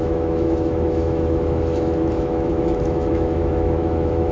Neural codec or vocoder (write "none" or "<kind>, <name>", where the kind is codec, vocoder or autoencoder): autoencoder, DAC-VAE